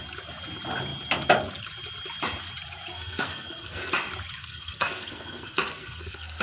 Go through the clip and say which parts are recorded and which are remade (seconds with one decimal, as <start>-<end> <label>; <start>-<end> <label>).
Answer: 0.0-2.9 recorded; 2.9-3.9 remade; 3.9-4.4 recorded; 4.4-6.4 remade